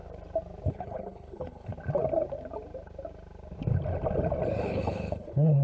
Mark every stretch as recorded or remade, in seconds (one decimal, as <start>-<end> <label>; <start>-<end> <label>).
0.0-0.7 recorded; 0.7-1.7 remade; 1.7-4.6 recorded; 4.6-5.6 remade